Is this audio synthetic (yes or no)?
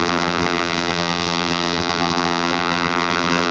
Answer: yes